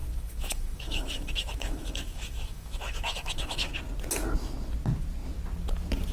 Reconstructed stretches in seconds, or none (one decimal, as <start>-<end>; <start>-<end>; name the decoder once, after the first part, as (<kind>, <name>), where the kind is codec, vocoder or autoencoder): 0.0-3.7 (autoencoder, DAC-VAE)